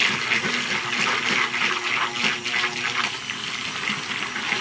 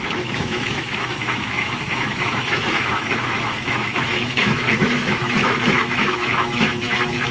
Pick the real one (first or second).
first